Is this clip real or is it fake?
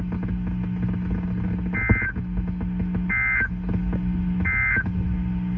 real